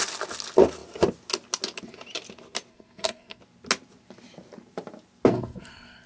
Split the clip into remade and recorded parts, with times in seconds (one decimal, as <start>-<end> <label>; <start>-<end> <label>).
0.0-2.7 recorded; 2.7-3.4 remade; 3.4-5.3 recorded; 5.3-6.1 remade